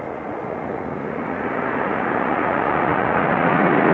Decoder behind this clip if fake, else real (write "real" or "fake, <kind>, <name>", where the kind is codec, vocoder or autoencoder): fake, vocoder, Vocos